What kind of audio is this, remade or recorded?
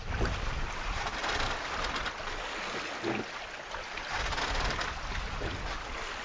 recorded